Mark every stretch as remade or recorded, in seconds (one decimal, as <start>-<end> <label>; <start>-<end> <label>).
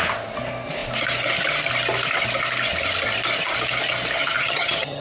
0.0-4.2 recorded; 4.2-5.0 remade